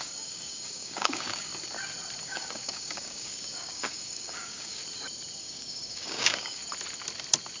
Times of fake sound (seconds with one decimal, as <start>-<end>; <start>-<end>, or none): 0.0-1.5; 2.2-4.8; 5.4-6.6